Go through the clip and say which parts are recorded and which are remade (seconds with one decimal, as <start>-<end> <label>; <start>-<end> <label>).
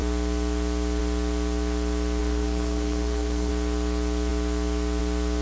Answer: 0.0-2.2 recorded; 2.2-3.5 remade; 3.5-5.4 recorded